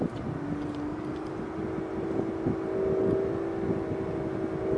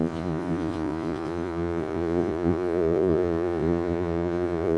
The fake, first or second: second